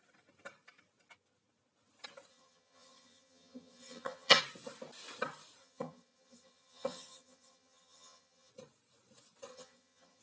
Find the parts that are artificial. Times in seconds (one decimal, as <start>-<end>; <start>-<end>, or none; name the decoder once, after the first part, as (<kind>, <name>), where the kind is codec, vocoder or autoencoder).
2.3-4.4 (vocoder, HiFi-GAN); 5.6-8.5; 9.5-10.2